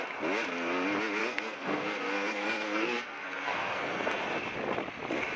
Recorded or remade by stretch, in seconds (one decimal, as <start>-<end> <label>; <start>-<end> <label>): 0.0-1.2 recorded; 1.2-4.2 remade; 4.2-5.4 recorded